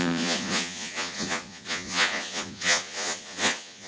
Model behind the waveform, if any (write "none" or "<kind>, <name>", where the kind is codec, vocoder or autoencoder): vocoder, Vocos